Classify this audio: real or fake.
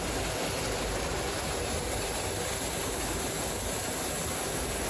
real